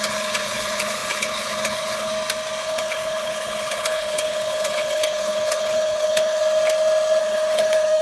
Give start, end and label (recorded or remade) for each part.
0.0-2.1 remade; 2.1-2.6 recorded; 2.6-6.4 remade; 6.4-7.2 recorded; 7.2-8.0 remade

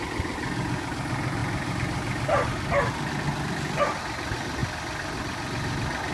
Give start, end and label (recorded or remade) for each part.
0.0-6.1 recorded